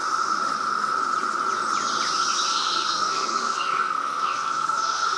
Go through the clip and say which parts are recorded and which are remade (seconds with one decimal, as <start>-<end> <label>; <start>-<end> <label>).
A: 0.0-2.5 recorded; 2.5-5.2 remade